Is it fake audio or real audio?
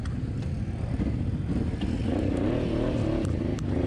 real